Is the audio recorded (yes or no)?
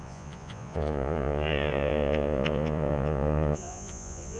no